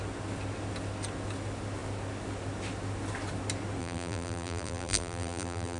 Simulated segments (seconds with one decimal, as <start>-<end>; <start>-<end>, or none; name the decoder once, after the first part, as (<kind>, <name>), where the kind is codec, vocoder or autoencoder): 3.8-5.8 (vocoder, BigVGAN v2)